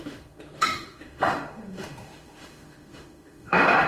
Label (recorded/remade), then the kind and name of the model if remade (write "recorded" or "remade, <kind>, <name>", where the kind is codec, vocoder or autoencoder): remade, autoencoder, DAC-VAE